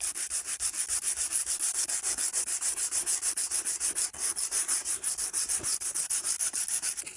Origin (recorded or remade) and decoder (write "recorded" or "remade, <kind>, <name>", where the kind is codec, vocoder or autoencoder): recorded